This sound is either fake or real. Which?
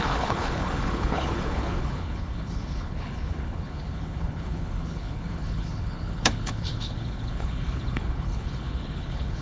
fake